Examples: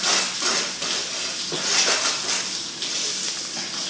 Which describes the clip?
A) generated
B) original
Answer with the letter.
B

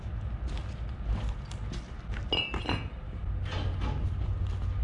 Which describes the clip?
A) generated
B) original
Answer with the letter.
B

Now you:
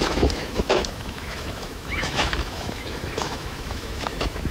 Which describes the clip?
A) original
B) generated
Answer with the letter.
B